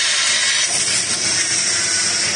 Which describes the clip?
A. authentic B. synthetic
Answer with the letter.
A